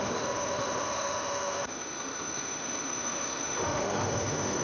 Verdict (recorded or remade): remade